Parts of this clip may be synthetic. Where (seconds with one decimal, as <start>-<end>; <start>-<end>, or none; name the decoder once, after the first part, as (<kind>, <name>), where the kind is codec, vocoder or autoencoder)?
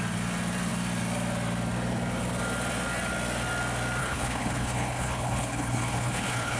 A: 4.0-6.6 (codec, HILCodec)